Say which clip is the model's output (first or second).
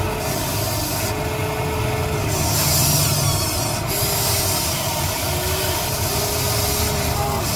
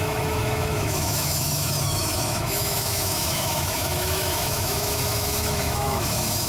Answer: second